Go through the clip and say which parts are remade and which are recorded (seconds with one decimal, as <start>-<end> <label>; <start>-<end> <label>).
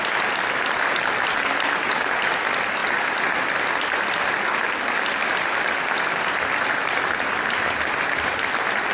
0.0-8.9 recorded